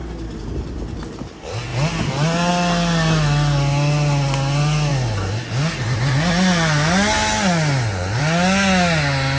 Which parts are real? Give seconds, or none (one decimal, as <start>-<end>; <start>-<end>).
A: 0.0-9.4